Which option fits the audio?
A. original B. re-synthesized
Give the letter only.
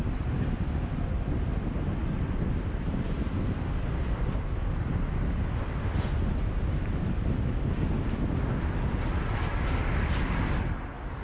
A